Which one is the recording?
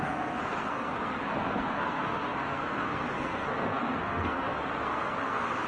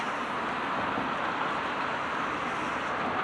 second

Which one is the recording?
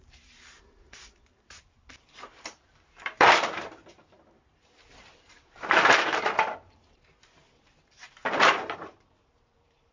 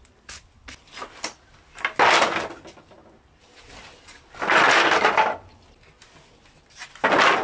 second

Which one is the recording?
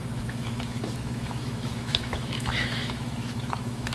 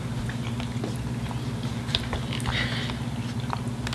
second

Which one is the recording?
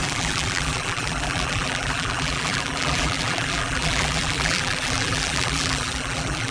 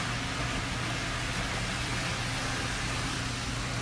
second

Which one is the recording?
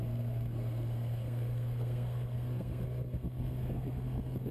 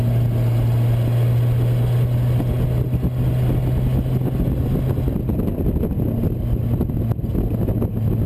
second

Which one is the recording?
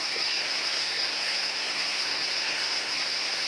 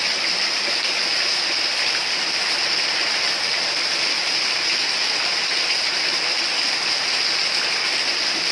second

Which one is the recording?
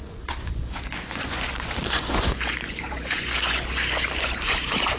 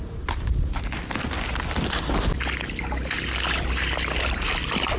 second